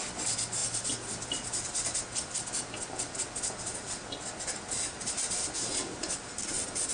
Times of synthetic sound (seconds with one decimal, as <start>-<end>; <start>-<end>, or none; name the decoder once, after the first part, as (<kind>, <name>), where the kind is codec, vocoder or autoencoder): none